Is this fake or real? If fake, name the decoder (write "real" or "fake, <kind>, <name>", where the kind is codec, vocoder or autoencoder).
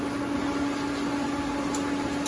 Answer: real